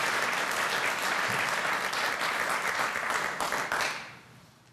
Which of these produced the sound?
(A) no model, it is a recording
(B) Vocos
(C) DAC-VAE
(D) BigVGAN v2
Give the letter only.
A